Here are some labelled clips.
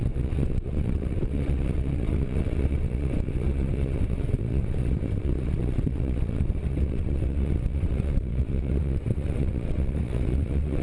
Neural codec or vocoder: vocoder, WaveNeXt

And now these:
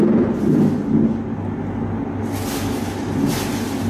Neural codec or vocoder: none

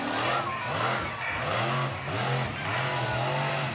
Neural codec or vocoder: none